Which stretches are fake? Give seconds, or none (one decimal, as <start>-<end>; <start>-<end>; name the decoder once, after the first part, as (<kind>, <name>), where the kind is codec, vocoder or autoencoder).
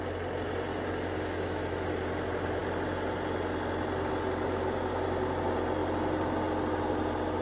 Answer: 0.7-1.9 (autoencoder, DAC-VAE)